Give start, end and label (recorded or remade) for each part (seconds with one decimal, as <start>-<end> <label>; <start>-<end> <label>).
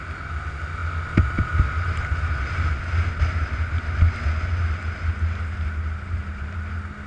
0.0-7.1 recorded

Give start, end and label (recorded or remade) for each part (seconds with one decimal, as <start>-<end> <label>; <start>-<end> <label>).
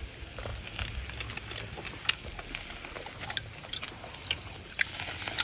0.0-5.4 recorded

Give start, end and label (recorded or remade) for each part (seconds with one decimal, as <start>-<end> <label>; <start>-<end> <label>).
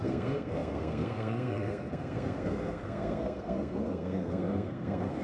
0.0-5.2 remade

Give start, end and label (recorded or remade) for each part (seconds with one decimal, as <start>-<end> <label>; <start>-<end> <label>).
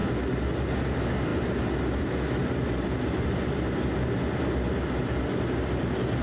0.0-6.2 recorded